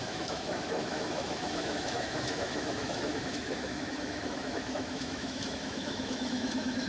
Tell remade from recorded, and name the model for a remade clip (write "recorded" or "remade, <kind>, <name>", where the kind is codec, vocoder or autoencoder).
remade, autoencoder, DAC-VAE